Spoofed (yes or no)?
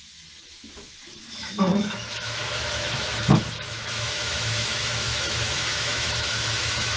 yes